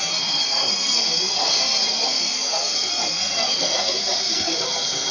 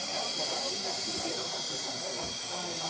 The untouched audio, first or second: second